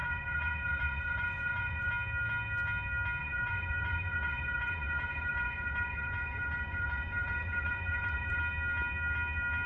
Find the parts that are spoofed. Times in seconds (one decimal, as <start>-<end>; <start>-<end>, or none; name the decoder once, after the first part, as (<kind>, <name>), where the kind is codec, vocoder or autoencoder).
0.0-1.9 (vocoder, Vocos); 3.2-8.4